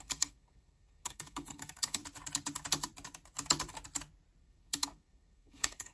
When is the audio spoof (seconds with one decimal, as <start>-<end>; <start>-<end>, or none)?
0.0-2.0; 4.4-5.9